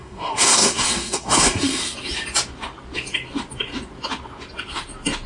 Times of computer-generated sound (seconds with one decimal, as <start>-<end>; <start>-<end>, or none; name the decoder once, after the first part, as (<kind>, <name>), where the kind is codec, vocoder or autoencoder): 0.0-1.8 (codec, SNAC)